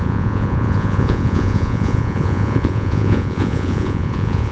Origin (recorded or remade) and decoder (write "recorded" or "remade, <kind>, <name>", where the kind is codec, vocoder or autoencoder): remade, vocoder, Vocos